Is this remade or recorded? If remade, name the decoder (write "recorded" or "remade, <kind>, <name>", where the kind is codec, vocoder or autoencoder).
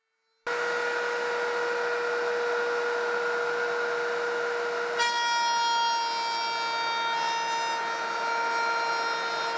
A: recorded